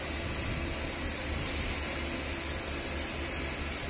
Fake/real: real